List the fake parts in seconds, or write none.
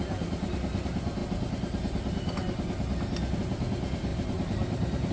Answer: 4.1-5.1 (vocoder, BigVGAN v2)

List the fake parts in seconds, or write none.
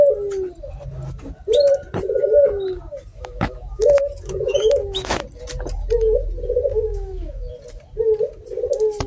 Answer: 3.1-5.2 (autoencoder, DAC-VAE); 6.7-7.5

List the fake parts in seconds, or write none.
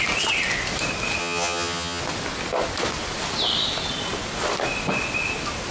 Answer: 1.2-2.0 (vocoder, HiFi-GAN)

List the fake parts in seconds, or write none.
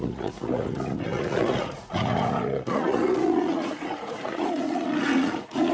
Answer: 0.0-5.7 (vocoder, Vocos)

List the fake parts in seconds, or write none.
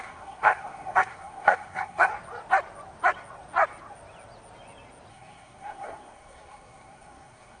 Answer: 0.0-2.1 (codec, SNAC); 5.1-7.6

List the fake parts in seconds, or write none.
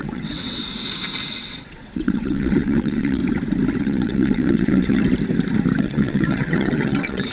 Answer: 0.0-0.6 (vocoder, WaveNeXt); 1.4-3.2; 3.8-5.0; 5.8-7.3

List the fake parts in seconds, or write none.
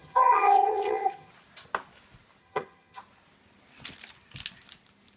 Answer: 0.0-1.3 (vocoder, HiFi-GAN); 2.4-3.0